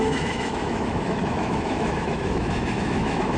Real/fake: fake